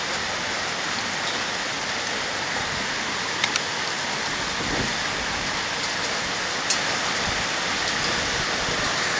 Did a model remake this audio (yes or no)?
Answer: no